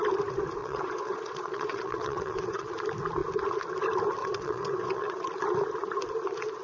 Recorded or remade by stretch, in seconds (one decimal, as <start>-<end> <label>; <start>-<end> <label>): 0.0-0.6 recorded; 0.6-2.7 remade; 2.7-4.2 recorded; 4.2-5.2 remade; 5.2-6.6 recorded